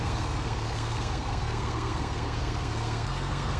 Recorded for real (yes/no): no